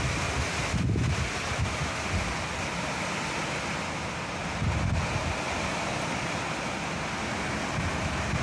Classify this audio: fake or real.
real